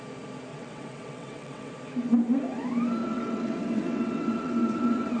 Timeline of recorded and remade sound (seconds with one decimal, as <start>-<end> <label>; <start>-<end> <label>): 0.0-0.5 recorded; 0.5-1.7 remade; 1.7-3.0 recorded; 3.0-5.2 remade

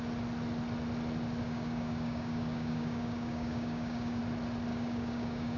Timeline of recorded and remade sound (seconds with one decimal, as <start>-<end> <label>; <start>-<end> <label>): 0.0-1.4 recorded; 1.4-4.2 remade; 4.2-4.7 recorded; 4.7-5.6 remade

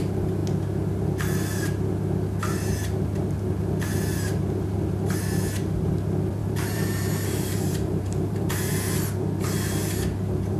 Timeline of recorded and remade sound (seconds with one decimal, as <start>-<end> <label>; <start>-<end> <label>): 0.0-6.4 recorded; 6.4-8.5 remade; 8.5-10.6 recorded

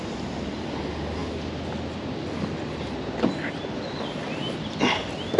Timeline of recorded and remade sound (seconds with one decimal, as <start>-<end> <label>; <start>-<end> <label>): 0.0-5.4 recorded

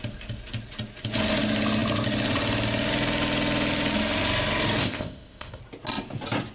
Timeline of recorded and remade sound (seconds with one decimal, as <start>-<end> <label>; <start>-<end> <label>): 0.0-4.8 recorded; 4.8-5.6 remade; 5.6-6.5 recorded

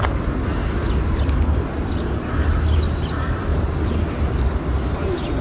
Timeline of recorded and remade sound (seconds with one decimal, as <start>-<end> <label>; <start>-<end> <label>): 0.0-5.4 recorded